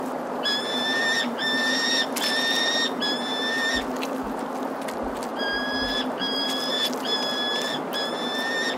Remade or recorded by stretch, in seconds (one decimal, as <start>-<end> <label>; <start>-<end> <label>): 0.0-5.3 recorded; 5.3-6.7 remade; 6.7-8.8 recorded